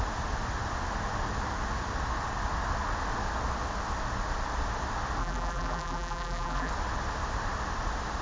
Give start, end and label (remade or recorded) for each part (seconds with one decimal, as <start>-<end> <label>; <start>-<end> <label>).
0.0-5.2 recorded; 5.2-6.7 remade; 6.7-8.2 recorded